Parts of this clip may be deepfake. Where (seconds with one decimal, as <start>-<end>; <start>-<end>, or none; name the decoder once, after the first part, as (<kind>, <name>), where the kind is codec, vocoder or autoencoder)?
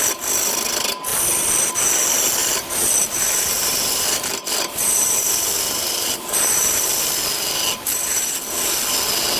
1.1-1.7 (vocoder, BigVGAN v2); 2.4-7.2